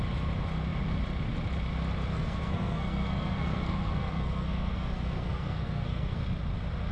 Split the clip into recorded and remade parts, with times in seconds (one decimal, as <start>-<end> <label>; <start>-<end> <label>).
0.0-2.1 recorded; 2.1-6.2 remade; 6.2-6.9 recorded